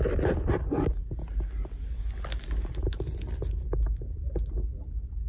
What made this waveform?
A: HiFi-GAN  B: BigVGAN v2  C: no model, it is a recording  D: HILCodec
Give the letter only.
C